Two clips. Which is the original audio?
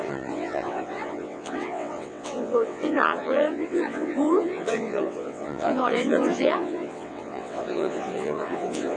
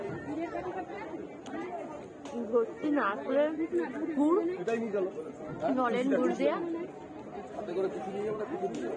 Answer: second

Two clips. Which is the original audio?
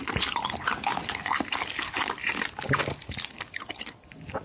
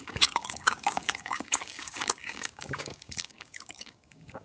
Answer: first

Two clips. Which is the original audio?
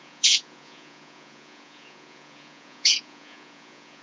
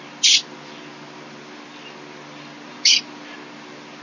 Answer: second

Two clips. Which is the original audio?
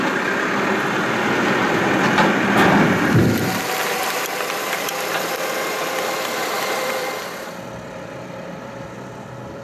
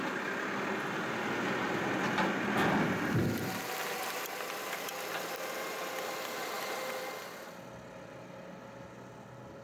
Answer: second